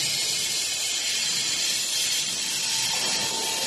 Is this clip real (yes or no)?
yes